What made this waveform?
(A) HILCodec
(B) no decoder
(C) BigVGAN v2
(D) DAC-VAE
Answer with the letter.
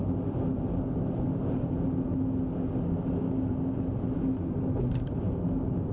B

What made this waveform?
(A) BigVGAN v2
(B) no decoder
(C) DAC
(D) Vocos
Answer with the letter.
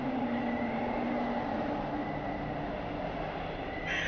B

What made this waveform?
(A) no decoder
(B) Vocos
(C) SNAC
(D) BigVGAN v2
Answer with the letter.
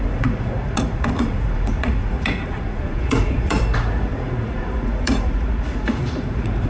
B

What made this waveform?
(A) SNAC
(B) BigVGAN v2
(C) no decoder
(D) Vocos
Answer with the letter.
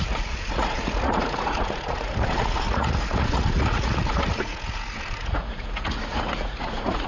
D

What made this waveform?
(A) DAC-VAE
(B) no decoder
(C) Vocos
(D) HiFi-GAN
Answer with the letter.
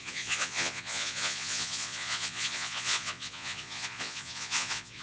C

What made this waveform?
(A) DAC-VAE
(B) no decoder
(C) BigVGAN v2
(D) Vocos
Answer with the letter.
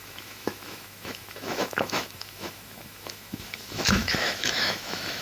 A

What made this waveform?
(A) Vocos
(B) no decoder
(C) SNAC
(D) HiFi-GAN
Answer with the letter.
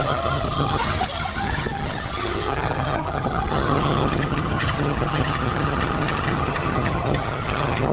D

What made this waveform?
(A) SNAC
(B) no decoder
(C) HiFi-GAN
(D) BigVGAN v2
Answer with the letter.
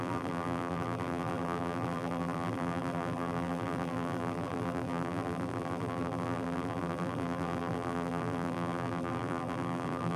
D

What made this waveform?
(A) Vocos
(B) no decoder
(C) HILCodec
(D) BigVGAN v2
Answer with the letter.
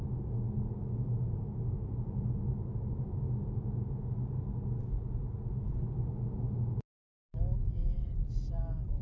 B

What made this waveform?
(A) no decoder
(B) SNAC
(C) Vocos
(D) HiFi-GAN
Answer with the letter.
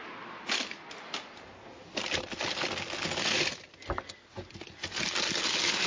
A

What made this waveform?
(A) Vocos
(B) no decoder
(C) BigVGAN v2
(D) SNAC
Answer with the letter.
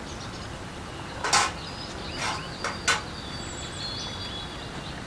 B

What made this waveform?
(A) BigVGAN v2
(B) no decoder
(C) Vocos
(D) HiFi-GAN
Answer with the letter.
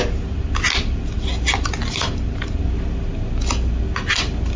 B